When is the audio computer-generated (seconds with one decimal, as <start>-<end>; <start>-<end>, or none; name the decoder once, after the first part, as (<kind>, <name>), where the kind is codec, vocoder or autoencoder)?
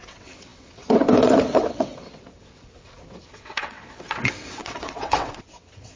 0.0-6.0 (vocoder, WaveNeXt)